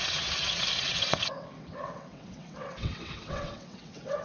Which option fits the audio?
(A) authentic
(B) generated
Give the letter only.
B